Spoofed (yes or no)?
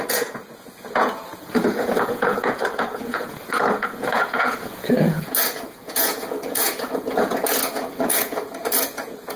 yes